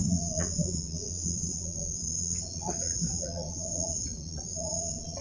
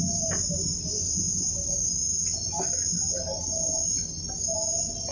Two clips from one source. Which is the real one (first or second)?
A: second